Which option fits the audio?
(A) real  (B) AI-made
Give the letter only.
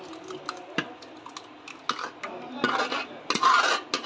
A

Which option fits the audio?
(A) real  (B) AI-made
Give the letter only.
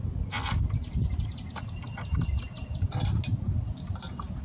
A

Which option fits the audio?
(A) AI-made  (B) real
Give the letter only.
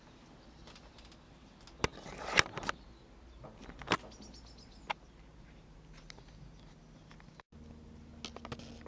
B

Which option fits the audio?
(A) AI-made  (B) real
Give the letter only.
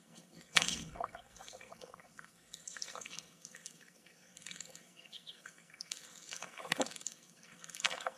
A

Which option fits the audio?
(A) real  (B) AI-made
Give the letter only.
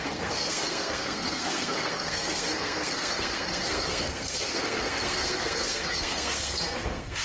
B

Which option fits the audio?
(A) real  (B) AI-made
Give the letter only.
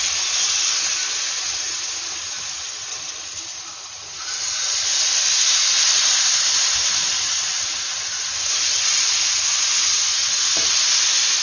A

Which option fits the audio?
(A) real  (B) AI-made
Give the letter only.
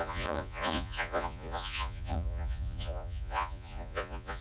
B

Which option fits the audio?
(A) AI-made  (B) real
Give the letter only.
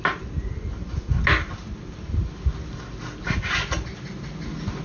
B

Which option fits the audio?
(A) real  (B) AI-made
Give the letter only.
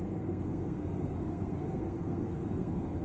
B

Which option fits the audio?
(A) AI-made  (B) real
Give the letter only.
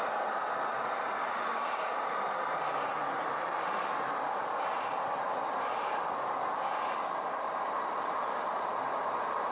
B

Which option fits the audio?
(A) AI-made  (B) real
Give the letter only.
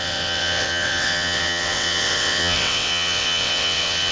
A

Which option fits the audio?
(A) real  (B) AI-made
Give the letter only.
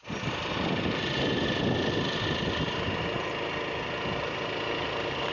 A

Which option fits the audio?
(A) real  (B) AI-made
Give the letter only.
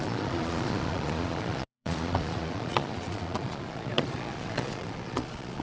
B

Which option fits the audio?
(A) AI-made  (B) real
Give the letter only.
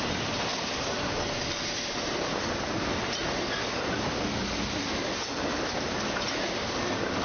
B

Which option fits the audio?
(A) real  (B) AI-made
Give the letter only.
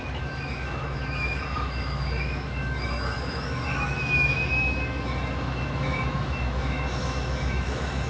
B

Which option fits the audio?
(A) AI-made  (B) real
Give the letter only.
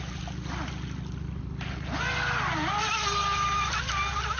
B